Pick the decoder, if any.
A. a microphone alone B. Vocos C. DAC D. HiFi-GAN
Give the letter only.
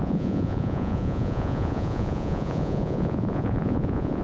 B